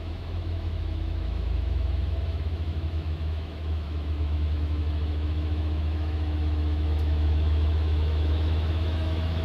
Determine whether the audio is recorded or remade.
remade